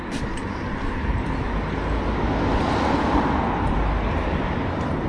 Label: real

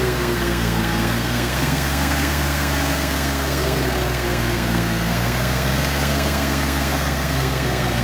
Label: fake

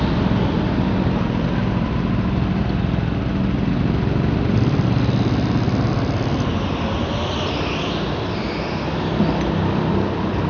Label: real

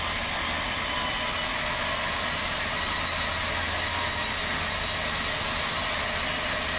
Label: real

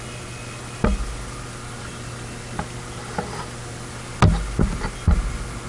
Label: real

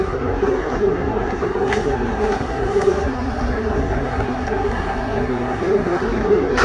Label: fake